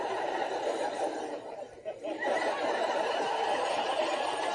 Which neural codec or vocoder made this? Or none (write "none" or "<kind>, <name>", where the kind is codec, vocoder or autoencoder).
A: vocoder, BigVGAN v2